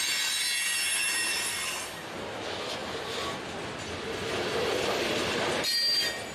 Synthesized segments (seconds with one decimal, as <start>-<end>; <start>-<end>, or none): none